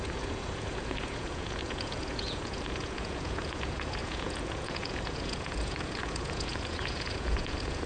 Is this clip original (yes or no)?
no